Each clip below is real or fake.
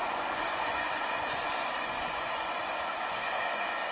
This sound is fake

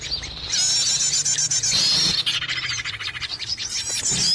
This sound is real